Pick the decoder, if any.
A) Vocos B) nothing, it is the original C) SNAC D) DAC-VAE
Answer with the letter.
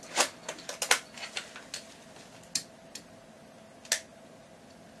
B